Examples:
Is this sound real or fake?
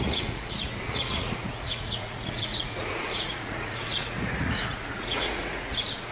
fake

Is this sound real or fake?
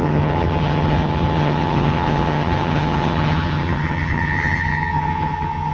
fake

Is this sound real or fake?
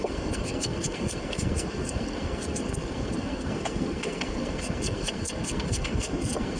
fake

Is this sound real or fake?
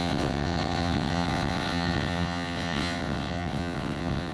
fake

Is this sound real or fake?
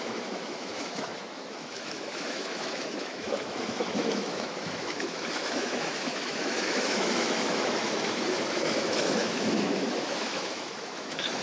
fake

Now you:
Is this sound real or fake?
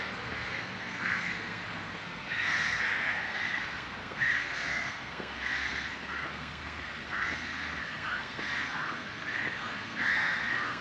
fake